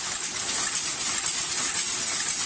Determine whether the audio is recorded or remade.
recorded